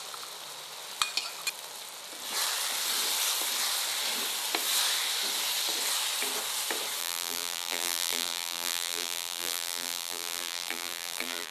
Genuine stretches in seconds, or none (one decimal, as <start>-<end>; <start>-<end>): 0.0-7.0